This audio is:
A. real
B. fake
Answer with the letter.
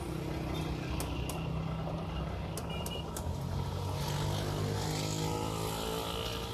A